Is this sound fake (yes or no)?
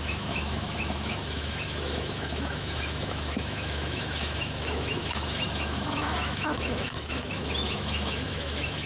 yes